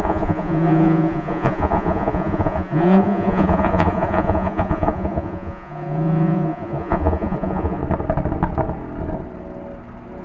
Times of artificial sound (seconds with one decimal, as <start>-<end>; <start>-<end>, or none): 0.0-7.8